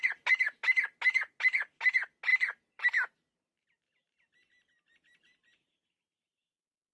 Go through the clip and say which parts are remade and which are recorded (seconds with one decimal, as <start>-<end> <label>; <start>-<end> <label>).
0.0-2.3 recorded; 2.3-6.4 remade; 6.4-6.9 recorded